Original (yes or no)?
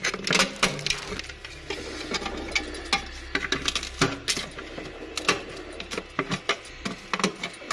yes